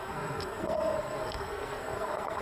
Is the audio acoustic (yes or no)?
no